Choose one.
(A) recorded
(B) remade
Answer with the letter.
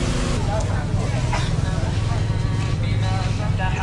A